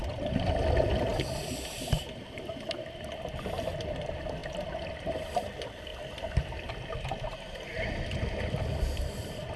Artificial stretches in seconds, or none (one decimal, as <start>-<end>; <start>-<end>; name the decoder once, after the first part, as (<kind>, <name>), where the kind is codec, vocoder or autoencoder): none